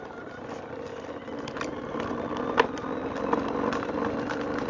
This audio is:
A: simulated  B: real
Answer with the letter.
B